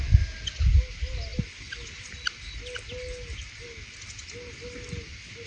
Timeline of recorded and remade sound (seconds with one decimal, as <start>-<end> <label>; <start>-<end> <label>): 0.0-5.5 recorded